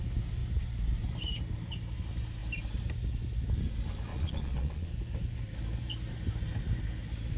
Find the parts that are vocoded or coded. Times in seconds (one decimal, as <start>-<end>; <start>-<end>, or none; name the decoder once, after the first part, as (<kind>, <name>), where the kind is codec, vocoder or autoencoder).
4.1-4.9 (vocoder, Vocos)

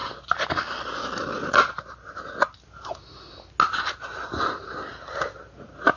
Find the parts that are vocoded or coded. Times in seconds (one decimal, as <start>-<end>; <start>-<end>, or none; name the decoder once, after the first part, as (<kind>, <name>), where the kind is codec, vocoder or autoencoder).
none

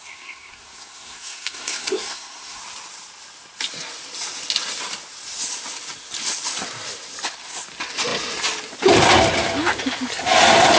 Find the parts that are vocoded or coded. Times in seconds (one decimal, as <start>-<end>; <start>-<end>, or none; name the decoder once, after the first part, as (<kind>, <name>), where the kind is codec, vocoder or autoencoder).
0.0-2.6 (codec, SNAC)

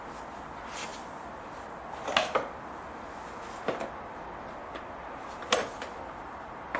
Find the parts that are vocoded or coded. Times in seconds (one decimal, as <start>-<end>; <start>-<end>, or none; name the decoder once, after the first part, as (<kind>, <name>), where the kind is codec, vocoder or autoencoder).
none

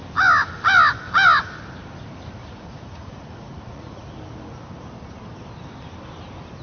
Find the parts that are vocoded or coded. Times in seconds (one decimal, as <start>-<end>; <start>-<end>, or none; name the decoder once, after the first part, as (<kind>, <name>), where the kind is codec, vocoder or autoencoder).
2.4-4.1 (vocoder, Vocos)

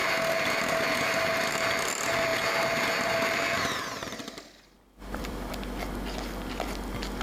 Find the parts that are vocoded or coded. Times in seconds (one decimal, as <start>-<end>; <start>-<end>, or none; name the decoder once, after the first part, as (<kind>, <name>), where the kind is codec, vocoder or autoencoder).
2.3-5.5 (vocoder, BigVGAN v2)

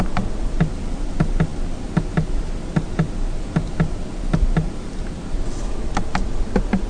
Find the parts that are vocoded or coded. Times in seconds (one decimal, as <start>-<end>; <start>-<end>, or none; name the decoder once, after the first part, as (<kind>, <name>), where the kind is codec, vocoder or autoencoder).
none

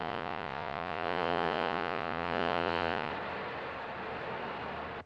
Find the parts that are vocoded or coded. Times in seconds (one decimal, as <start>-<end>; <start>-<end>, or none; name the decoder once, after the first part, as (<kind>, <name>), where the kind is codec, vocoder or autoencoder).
0.0-3.1 (vocoder, Vocos)